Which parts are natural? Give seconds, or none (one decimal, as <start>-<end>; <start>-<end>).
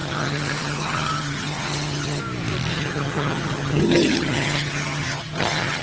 2.2-2.7